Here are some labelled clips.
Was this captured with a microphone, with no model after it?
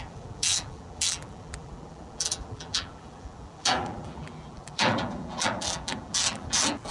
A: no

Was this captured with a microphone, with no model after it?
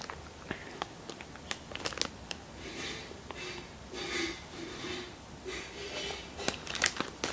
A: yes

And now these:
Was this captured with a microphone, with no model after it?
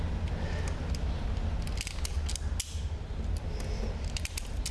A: yes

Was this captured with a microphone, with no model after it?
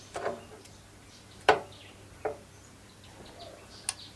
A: yes